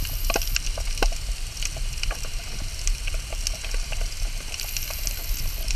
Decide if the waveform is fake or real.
real